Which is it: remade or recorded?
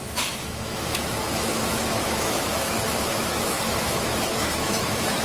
remade